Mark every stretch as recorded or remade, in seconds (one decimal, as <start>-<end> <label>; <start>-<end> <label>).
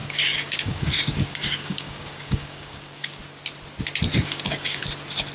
0.0-3.2 remade; 3.2-4.1 recorded; 4.1-4.8 remade; 4.8-5.3 recorded